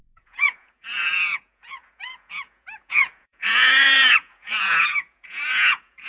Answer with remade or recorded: remade